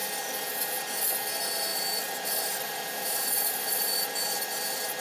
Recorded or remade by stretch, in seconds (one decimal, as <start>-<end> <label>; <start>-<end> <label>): 0.0-1.7 recorded; 1.7-4.4 remade; 4.4-5.0 recorded